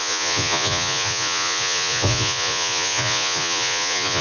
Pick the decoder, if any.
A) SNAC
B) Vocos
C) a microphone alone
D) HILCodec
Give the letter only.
B